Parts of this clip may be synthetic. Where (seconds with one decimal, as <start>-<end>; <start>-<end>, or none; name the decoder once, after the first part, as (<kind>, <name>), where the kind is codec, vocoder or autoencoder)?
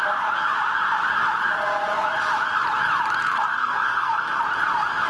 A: 3.2-4.4 (codec, SNAC)